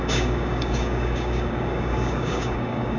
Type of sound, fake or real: fake